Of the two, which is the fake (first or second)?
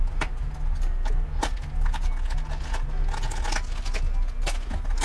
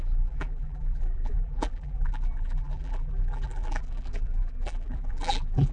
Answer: second